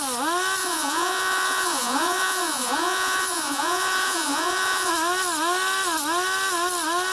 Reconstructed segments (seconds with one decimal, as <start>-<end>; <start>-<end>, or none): 0.6-4.9